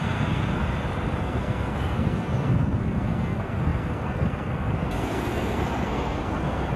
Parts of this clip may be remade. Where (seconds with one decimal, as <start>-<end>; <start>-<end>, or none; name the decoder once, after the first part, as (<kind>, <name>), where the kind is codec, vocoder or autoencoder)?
0.0-0.6 (codec, SNAC); 1.2-6.8